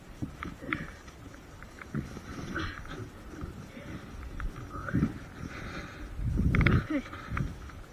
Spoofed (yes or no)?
no